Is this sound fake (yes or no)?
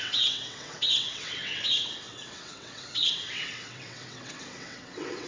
yes